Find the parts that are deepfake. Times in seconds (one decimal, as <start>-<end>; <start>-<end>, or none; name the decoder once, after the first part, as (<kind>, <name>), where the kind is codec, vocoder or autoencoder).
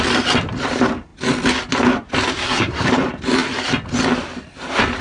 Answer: 2.4-2.9 (codec, SNAC)